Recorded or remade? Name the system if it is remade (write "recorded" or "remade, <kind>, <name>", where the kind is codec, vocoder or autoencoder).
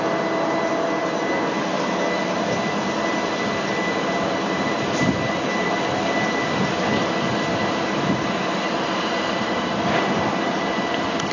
recorded